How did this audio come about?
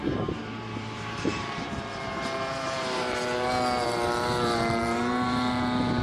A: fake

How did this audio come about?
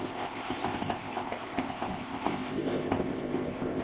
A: fake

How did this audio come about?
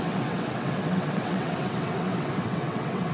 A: fake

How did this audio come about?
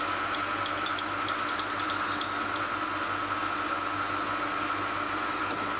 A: real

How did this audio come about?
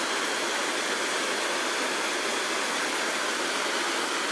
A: real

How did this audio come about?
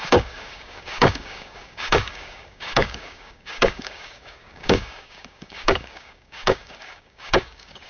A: fake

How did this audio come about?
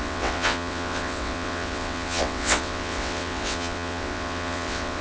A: fake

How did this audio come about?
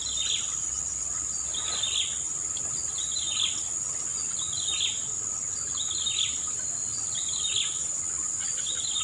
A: real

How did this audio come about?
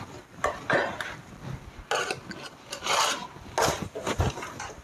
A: real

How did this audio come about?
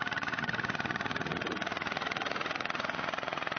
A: fake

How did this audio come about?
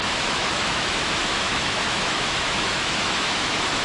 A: fake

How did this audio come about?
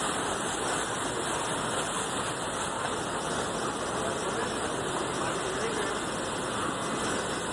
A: real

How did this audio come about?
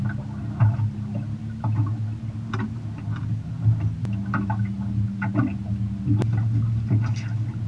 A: real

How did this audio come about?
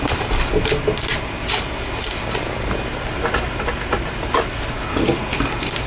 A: real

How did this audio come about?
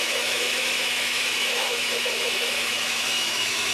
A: fake